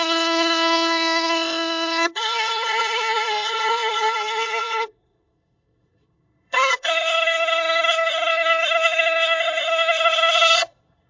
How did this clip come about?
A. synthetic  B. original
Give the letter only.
A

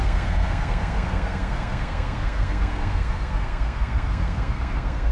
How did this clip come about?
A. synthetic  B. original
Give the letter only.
A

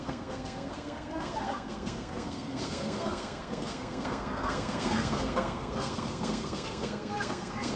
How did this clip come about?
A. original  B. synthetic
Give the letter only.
B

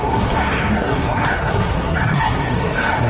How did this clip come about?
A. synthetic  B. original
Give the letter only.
A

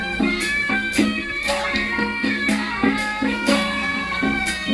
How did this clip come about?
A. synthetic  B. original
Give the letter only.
A